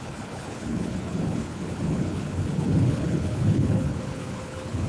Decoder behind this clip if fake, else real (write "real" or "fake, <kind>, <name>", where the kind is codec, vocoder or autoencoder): fake, codec, HILCodec